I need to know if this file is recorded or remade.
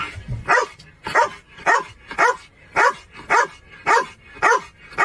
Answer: recorded